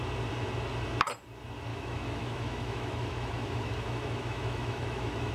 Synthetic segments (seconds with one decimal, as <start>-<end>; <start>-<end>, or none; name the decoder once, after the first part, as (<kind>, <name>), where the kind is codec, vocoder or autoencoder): 1.7-5.3 (autoencoder, DAC-VAE)

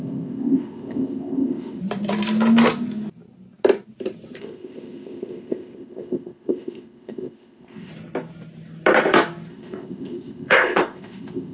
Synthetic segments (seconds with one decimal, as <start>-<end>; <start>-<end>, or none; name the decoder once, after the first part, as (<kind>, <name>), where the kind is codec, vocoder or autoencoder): 0.0-1.8 (codec, ZipCodec); 4.4-7.9; 9.5-11.5

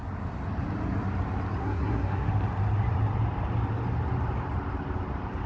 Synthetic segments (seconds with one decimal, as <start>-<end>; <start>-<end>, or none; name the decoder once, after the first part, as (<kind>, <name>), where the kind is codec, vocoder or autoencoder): 1.6-2.3 (codec, SNAC)

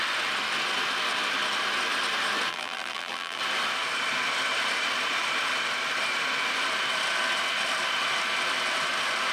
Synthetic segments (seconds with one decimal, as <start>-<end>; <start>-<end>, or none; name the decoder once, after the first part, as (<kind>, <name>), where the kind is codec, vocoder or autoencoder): 2.5-3.4 (vocoder, BigVGAN v2)

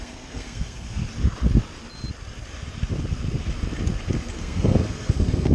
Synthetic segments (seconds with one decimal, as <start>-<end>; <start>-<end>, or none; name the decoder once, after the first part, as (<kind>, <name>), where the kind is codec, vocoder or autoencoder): 0.0-1.0 (codec, SNAC); 4.3-5.5

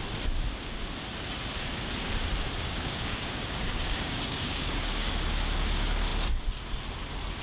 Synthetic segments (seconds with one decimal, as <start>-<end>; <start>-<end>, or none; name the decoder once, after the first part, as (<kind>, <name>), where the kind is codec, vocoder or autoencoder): 2.6-5.1 (codec, DAC)

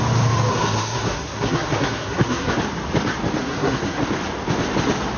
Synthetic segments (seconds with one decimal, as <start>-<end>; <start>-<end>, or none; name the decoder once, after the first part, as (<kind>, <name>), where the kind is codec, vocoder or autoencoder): 0.5-2.5 (codec, SNAC); 3.4-4.0

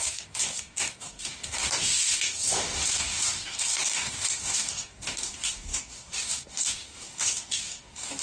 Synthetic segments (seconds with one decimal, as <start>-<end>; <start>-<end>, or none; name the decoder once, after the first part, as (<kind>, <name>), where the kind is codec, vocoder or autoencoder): 0.0-8.2 (codec, DAC)